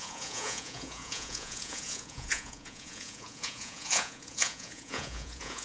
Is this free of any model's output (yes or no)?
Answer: no